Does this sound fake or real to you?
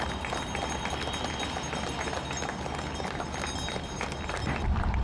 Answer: real